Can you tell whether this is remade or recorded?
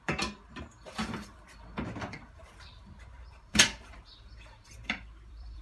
remade